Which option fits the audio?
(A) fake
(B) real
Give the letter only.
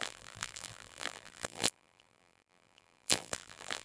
A